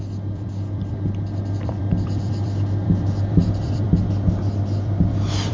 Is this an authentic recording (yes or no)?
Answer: no